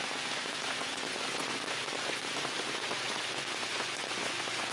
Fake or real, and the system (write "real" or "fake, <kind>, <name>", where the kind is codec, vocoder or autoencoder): fake, vocoder, Vocos